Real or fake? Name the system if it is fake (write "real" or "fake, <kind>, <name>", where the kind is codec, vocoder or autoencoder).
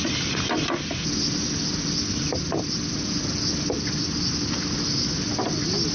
real